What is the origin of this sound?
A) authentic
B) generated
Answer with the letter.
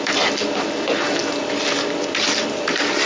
A